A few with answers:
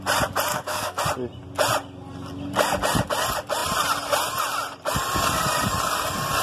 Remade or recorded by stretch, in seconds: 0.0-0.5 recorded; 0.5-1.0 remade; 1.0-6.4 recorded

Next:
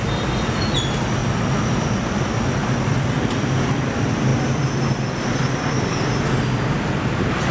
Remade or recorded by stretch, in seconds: 0.0-7.5 recorded

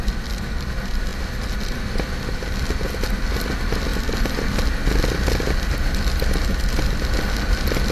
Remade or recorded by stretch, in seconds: 0.0-7.9 recorded

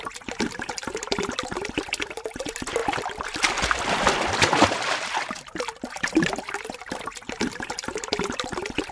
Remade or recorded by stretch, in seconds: 0.0-2.8 remade; 2.8-6.8 recorded; 6.8-8.9 remade

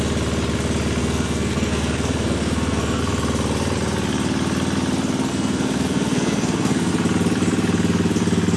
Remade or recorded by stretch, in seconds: 0.0-1.0 recorded; 1.0-3.0 remade; 3.0-5.3 recorded; 5.3-6.9 remade; 6.9-8.6 recorded